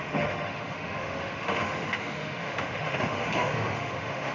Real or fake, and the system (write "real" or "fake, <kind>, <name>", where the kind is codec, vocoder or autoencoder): fake, autoencoder, DAC-VAE